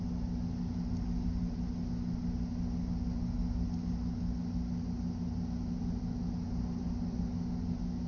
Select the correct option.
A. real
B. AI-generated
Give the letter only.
A